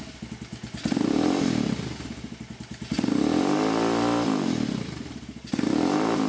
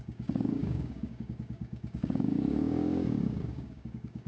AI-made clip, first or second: second